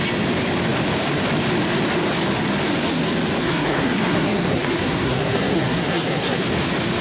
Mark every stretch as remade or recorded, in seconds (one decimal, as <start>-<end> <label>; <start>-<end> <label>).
0.0-3.4 recorded; 3.4-6.4 remade; 6.4-7.0 recorded